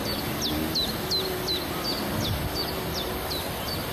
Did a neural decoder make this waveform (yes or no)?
no